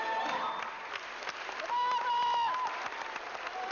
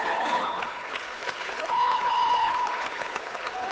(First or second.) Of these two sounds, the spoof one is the second